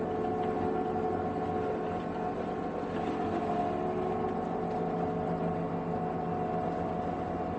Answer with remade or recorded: recorded